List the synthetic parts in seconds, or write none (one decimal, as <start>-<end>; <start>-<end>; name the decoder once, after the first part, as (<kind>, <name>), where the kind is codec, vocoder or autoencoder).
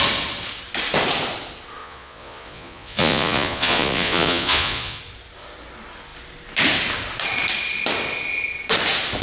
1.8-5.0 (vocoder, Vocos)